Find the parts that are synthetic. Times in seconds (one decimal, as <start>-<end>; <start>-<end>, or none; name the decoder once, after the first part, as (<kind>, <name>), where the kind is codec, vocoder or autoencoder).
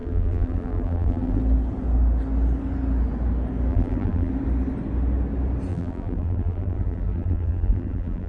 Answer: 0.0-1.4 (vocoder, BigVGAN v2); 3.7-4.3; 5.7-8.3